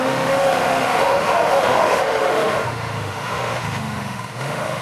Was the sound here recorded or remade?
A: remade